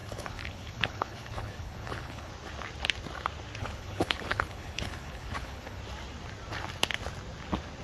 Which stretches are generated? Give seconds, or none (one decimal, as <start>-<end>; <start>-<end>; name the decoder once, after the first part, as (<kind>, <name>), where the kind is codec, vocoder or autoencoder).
0.0-2.3 (codec, HILCodec); 3.6-5.8